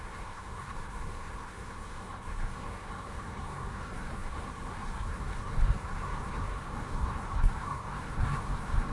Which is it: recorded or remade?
remade